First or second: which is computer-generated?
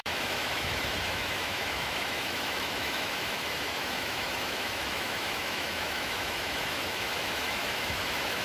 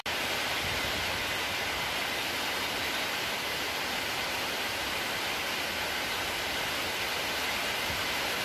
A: first